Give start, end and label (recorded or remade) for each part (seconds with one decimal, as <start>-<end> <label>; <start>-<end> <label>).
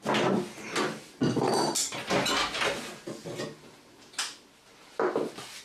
0.0-5.6 recorded